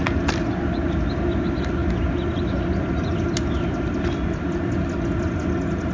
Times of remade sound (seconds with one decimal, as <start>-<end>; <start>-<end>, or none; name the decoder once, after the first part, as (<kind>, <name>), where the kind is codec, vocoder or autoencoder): none